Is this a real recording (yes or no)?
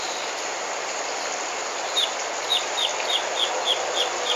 yes